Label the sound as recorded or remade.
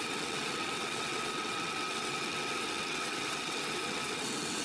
remade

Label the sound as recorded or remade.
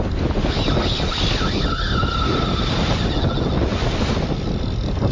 recorded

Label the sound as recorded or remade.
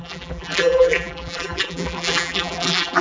remade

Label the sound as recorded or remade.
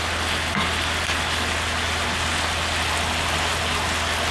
recorded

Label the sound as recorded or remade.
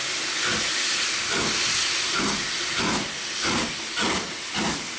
recorded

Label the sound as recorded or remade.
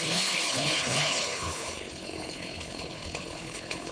remade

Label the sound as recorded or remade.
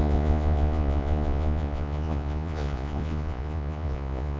remade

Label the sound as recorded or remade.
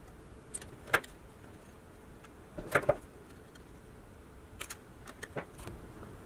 recorded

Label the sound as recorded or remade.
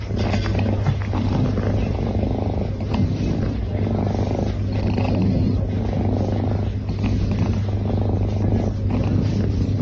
recorded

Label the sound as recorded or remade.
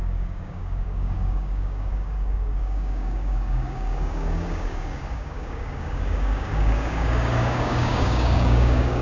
remade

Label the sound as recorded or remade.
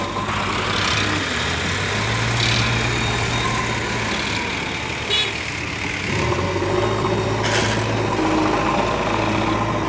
recorded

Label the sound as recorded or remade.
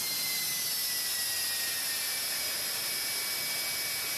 recorded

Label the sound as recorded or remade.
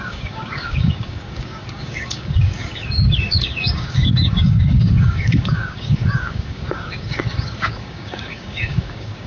remade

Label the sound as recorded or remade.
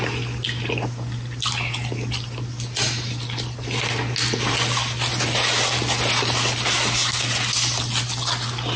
recorded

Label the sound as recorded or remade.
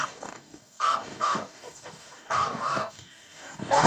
remade